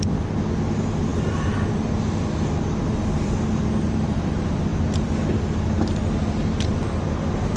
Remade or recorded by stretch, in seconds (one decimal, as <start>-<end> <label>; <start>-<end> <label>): 0.0-7.6 recorded